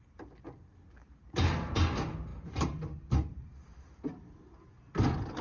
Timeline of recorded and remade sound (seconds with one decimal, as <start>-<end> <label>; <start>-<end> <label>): 0.0-5.4 recorded